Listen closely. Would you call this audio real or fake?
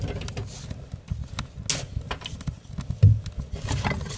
real